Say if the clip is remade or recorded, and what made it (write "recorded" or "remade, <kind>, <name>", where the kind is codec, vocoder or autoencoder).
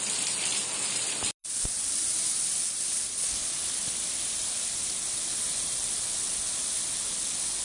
recorded